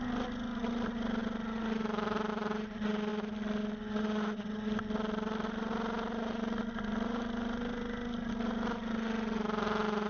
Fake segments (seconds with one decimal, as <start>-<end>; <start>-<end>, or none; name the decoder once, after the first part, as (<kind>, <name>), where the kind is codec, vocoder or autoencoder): none